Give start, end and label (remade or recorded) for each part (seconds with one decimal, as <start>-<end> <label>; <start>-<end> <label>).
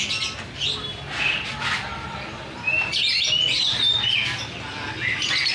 0.0-5.5 recorded